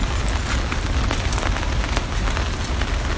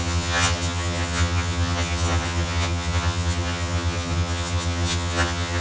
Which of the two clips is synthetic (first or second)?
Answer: second